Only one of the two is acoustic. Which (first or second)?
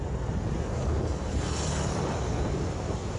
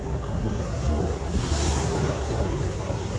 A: first